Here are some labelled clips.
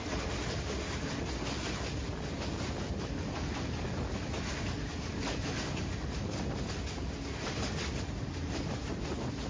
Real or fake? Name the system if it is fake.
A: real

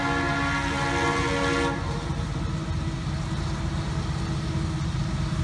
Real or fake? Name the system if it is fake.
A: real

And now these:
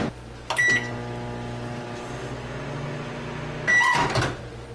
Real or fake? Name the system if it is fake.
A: real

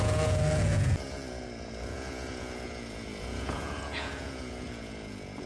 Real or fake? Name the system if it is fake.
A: fake, vocoder, Vocos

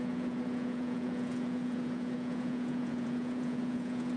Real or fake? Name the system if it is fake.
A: fake, vocoder, Vocos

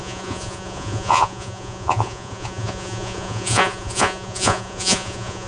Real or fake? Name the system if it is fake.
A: fake, vocoder, Vocos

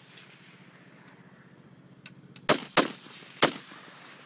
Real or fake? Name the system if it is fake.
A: real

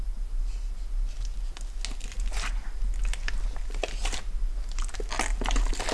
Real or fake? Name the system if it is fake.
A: real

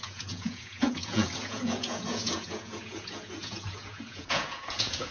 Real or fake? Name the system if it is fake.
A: fake, vocoder, Vocos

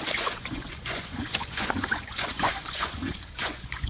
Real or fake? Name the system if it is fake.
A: fake, vocoder, Vocos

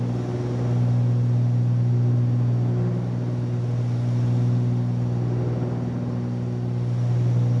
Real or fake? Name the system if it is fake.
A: real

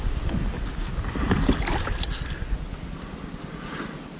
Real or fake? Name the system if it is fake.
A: real